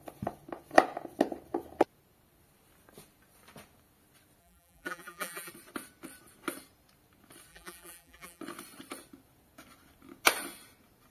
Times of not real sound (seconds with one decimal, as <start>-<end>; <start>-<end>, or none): 4.4-5.5; 7.5-8.4